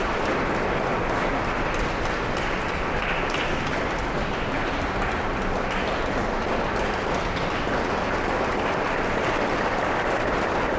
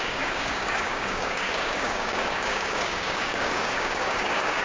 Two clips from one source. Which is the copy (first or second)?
second